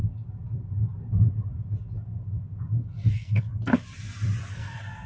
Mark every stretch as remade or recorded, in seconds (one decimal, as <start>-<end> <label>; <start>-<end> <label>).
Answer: 0.0-3.1 recorded; 3.1-3.5 remade; 3.5-4.5 recorded; 4.5-5.1 remade